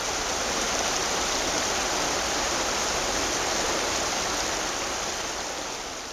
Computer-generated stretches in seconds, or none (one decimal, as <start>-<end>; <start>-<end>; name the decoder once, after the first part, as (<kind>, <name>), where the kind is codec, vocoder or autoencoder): 0.4-1.0 (vocoder, BigVGAN v2); 2.4-3.2

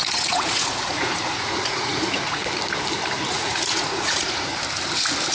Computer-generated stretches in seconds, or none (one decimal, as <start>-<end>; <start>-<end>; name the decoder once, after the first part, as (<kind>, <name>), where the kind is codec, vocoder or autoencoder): 0.0-2.4 (vocoder, Vocos); 3.3-4.5

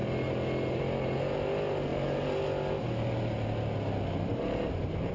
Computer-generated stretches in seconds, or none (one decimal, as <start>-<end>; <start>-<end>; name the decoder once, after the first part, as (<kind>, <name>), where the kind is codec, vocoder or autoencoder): none

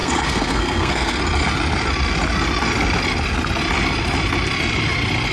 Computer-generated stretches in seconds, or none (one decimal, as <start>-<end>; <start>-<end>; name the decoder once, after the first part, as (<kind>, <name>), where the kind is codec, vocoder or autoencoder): 0.0-1.2 (codec, SNAC)

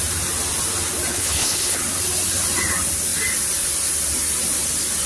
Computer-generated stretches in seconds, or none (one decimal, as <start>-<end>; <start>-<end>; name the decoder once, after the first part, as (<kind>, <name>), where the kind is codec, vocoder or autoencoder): 1.1-1.8 (codec, HILCodec)

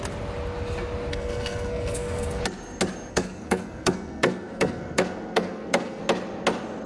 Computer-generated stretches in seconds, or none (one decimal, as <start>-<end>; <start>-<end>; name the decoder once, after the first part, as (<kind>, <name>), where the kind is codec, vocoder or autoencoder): 1.1-2.4 (codec, SNAC); 3.1-6.0

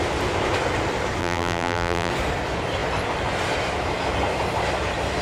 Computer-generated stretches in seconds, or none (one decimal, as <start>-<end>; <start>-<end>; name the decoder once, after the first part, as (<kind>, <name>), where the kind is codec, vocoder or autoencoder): 1.2-2.1 (vocoder, BigVGAN v2)